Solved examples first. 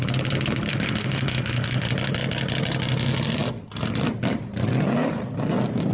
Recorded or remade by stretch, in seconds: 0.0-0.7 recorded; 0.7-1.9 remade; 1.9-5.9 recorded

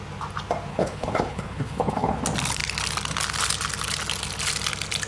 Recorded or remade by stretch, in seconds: 0.0-0.7 recorded; 0.7-2.2 remade; 2.2-5.1 recorded

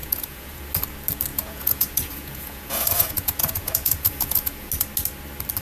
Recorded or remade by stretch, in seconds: 0.0-0.6 remade; 0.6-1.3 recorded; 1.3-4.7 remade; 4.7-5.6 recorded

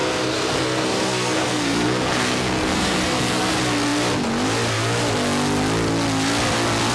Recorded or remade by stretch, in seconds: 0.0-3.5 remade; 3.5-6.9 recorded